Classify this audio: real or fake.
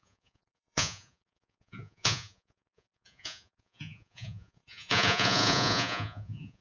fake